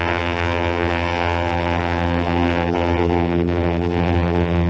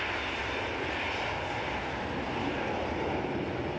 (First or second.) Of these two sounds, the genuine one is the second